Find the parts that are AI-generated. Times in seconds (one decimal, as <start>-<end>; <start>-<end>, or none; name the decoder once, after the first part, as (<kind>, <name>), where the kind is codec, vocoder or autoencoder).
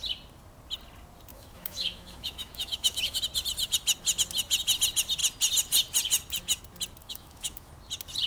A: 1.3-3.2 (autoencoder, DAC-VAE); 7.0-7.7